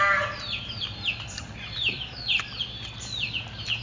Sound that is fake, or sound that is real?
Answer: real